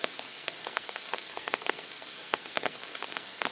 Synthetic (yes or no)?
yes